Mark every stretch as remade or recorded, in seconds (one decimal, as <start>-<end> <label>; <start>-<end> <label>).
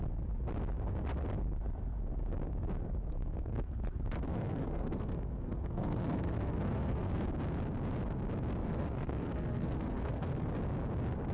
0.0-3.3 recorded; 3.3-3.8 remade; 3.8-4.3 recorded; 4.3-7.2 remade; 7.2-8.6 recorded; 8.6-10.5 remade; 10.5-11.3 recorded